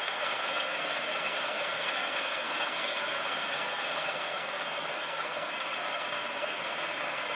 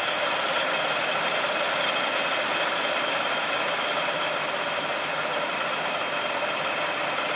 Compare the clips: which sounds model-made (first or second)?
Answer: first